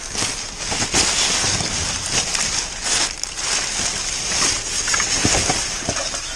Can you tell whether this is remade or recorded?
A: recorded